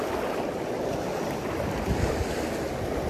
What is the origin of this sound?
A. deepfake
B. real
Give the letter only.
B